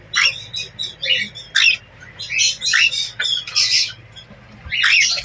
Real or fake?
real